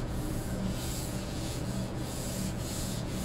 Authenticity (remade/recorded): remade